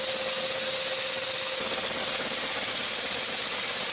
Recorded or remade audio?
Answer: recorded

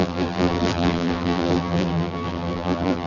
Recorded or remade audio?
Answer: remade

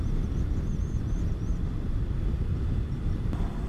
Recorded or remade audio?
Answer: recorded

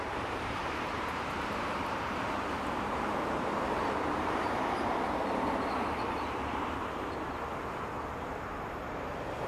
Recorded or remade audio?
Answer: remade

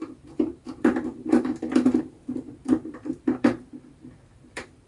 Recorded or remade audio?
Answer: remade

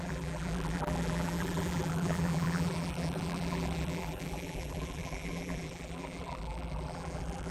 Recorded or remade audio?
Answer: remade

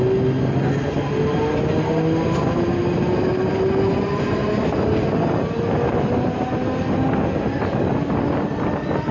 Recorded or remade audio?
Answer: recorded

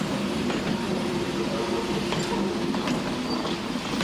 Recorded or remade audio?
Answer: recorded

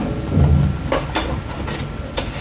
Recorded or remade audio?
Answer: recorded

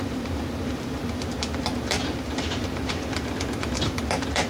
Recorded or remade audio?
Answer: remade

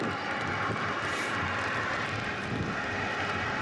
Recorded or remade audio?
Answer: recorded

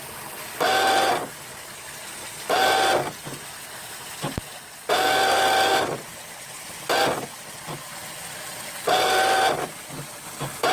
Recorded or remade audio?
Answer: recorded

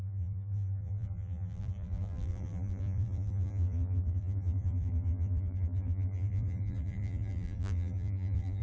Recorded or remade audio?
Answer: remade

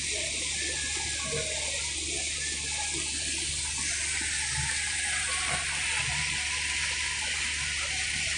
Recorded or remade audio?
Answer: recorded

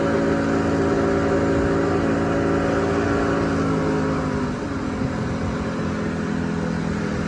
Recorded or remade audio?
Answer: recorded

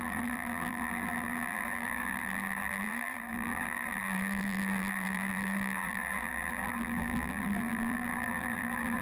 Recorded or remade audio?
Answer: remade